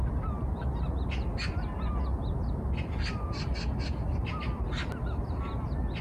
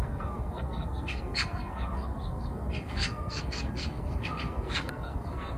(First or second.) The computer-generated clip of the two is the second